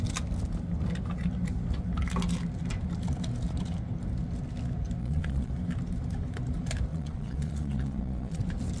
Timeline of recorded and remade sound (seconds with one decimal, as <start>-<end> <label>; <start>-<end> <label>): 0.0-5.0 recorded; 5.0-5.5 remade; 5.5-6.9 recorded; 6.9-8.4 remade; 8.4-8.8 recorded